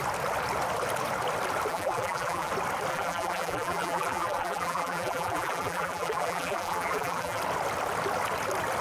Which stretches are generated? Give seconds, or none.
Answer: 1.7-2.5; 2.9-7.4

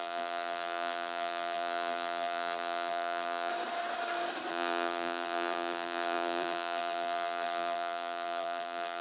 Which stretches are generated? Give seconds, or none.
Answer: 0.0-3.5; 4.5-9.0

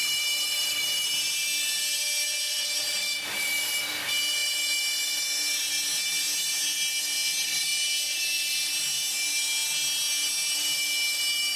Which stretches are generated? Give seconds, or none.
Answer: 0.0-3.9; 7.7-8.7

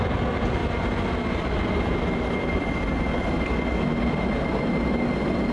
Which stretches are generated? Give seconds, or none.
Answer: none